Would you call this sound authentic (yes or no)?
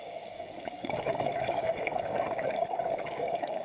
no